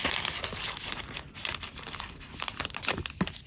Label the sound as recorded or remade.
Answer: recorded